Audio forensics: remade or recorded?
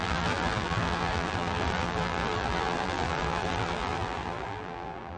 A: remade